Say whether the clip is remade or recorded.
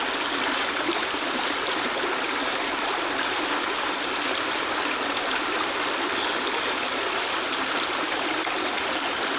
recorded